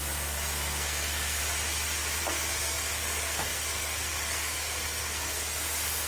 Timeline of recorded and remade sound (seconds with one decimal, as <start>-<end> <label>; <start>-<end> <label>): 0.0-1.4 remade; 1.4-2.2 recorded; 2.2-6.1 remade